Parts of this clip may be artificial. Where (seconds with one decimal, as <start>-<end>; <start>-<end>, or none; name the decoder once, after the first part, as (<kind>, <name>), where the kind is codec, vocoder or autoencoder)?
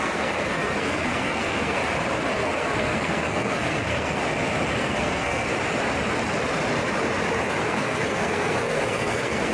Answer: 0.0-1.8 (codec, SNAC); 2.3-4.2; 4.8-5.5; 7.6-9.5